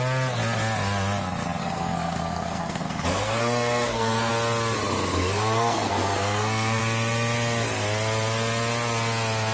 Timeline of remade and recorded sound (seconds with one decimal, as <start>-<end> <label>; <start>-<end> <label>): 0.0-1.6 recorded; 1.6-4.3 remade; 4.3-5.1 recorded; 5.1-6.8 remade; 6.8-9.5 recorded